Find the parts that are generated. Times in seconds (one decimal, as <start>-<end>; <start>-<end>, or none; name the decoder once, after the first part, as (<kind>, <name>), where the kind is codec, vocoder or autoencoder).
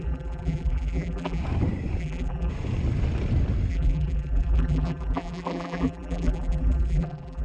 0.0-1.4 (vocoder, BigVGAN v2); 2.0-2.5; 3.7-7.4